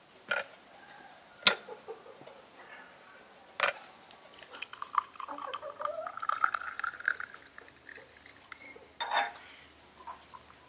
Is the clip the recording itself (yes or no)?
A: yes